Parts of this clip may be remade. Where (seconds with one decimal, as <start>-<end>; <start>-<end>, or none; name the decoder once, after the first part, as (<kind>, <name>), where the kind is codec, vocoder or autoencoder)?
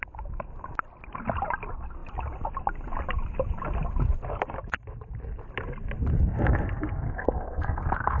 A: 6.1-8.2 (codec, SNAC)